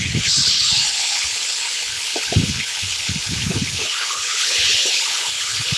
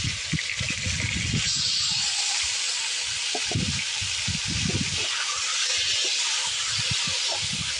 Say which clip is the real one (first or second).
second